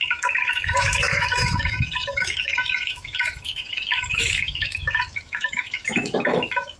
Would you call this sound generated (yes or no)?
yes